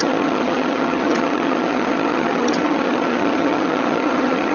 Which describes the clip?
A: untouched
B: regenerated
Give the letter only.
B